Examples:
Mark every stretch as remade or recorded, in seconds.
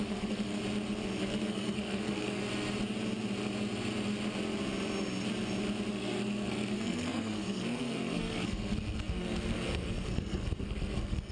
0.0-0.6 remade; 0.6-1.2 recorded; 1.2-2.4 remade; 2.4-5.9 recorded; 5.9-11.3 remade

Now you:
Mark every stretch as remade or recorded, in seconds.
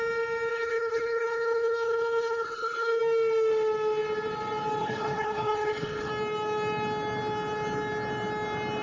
0.0-0.5 recorded; 0.5-3.0 remade; 3.0-4.8 recorded; 4.8-6.1 remade; 6.1-8.8 recorded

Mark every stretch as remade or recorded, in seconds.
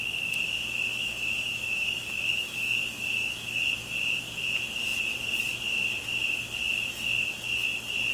0.0-0.9 recorded; 0.9-3.6 remade; 3.6-8.1 recorded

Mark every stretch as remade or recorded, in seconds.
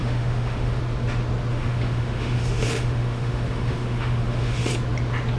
0.0-0.8 remade; 0.8-1.5 recorded; 1.5-4.7 remade; 4.7-5.4 recorded